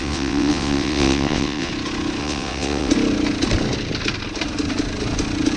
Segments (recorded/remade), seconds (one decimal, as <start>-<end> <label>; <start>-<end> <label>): 0.0-1.7 remade; 1.7-2.2 recorded; 2.2-2.9 remade; 2.9-5.6 recorded